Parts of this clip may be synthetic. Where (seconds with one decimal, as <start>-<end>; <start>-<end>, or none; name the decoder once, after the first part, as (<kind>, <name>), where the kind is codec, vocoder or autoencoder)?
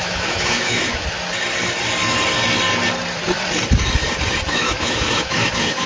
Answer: 0.0-1.0 (autoencoder, DAC-VAE); 4.5-5.9